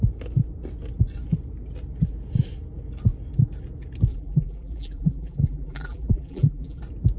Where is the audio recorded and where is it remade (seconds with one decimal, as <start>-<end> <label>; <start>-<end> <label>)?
0.0-4.1 recorded; 4.1-6.8 remade; 6.8-7.2 recorded

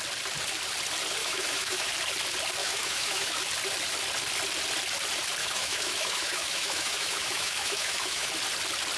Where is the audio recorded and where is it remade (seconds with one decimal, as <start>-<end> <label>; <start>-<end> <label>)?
0.0-1.2 recorded; 1.2-1.9 remade; 1.9-2.6 recorded; 2.6-3.4 remade; 3.4-5.4 recorded; 5.4-8.3 remade; 8.3-9.0 recorded